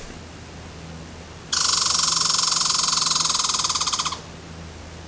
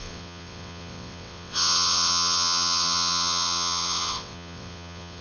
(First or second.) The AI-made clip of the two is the second